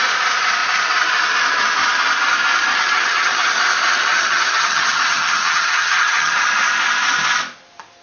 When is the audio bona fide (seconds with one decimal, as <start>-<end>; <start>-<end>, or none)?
0.0-2.7; 3.6-4.1; 6.4-8.0